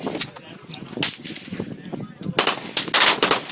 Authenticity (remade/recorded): recorded